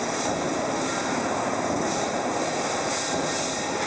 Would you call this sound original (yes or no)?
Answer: yes